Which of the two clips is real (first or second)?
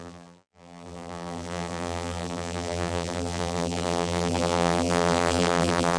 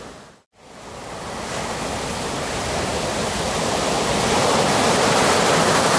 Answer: second